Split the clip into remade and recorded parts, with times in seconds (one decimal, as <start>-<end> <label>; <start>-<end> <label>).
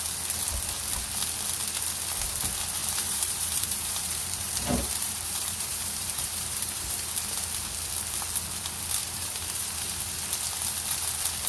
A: 0.0-2.8 recorded; 2.8-7.1 remade; 7.1-9.0 recorded; 9.0-10.0 remade; 10.0-11.5 recorded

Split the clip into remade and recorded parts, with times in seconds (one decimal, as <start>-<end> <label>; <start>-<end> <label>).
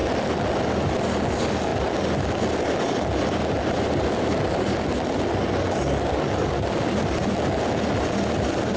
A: 0.0-8.8 recorded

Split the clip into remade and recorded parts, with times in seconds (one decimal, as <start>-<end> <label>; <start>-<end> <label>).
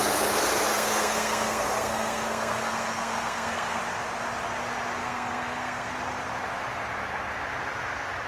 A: 0.0-0.7 recorded; 0.7-3.8 remade; 3.8-5.0 recorded; 5.0-5.9 remade; 5.9-8.3 recorded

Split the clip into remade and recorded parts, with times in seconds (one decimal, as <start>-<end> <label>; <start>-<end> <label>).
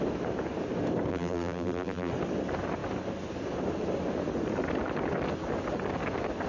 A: 0.0-1.1 recorded; 1.1-2.1 remade; 2.1-6.5 recorded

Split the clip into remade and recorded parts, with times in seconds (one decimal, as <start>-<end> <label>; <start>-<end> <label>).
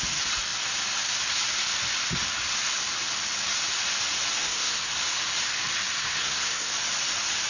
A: 0.0-4.4 recorded; 4.4-4.9 remade; 4.9-6.0 recorded; 6.0-6.7 remade; 6.7-7.5 recorded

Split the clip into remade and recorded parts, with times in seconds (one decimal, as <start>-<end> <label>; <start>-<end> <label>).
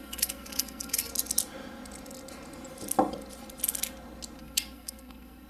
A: 0.0-1.1 remade; 1.1-4.4 recorded; 4.4-5.5 remade